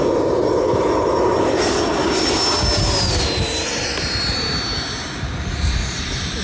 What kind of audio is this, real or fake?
real